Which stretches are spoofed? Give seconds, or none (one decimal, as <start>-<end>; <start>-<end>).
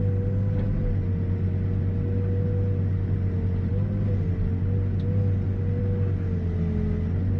none